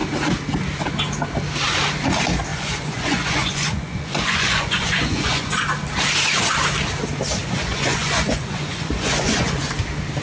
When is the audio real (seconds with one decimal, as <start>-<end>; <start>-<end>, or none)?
0.0-2.5; 5.5-7.4; 9.7-10.2